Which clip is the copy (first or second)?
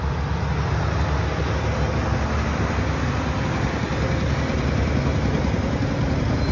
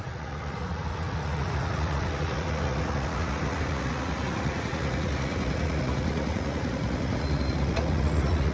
second